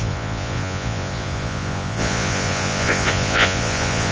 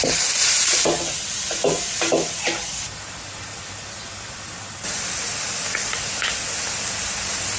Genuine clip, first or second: second